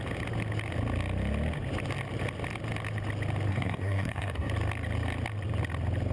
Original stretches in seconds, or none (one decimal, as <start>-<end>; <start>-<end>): 0.0-3.5; 4.5-6.1